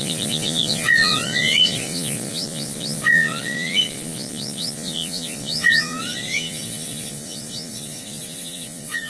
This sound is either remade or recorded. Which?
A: remade